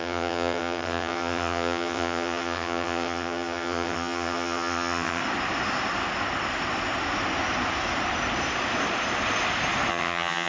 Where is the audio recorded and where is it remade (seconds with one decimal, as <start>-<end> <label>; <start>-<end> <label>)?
0.0-5.2 remade; 5.2-9.9 recorded; 9.9-10.5 remade